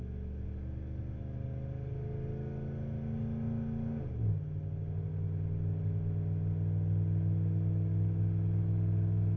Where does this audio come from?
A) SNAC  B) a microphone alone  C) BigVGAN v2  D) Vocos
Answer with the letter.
B